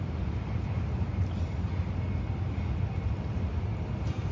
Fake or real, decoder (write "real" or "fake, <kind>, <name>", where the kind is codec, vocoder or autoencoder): real